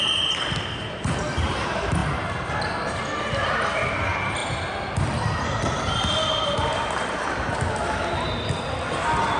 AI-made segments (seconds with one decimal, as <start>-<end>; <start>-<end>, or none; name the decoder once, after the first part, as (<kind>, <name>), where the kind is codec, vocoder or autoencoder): none

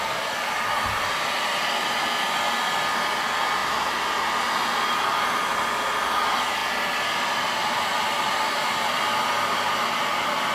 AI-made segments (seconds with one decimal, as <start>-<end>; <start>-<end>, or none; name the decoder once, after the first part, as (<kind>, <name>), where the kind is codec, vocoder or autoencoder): none

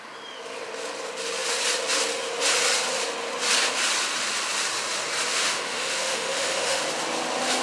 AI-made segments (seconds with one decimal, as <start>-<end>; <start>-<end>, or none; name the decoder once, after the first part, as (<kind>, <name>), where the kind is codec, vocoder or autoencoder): 5.3-6.8 (autoencoder, DAC-VAE)

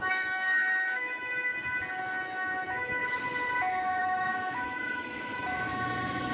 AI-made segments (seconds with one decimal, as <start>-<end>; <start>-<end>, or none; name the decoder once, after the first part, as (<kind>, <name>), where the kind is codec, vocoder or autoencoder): 0.0-1.5 (autoencoder, DAC-VAE); 2.0-3.0; 3.6-6.3